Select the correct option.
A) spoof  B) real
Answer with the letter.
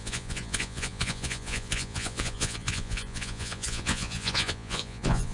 A